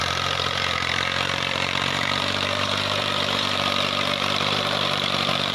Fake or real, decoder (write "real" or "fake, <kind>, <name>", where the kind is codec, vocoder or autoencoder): fake, vocoder, BigVGAN v2